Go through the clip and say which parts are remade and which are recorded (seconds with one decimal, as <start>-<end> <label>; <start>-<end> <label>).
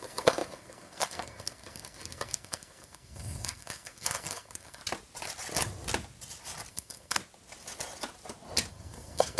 0.0-4.8 remade; 4.8-6.7 recorded; 6.7-7.2 remade; 7.2-8.7 recorded; 8.7-9.4 remade